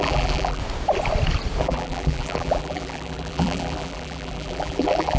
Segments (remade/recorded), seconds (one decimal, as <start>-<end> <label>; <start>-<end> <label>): 0.0-0.6 remade; 0.6-1.6 recorded; 1.6-5.2 remade